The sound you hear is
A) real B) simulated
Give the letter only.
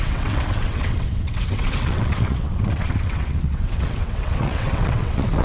B